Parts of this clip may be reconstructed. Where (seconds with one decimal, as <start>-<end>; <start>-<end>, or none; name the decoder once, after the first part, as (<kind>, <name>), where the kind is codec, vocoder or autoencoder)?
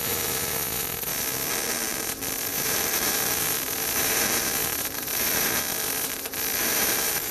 2.5-5.6 (vocoder, BigVGAN v2); 6.6-7.3